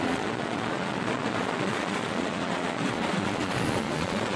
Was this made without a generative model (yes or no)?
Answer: no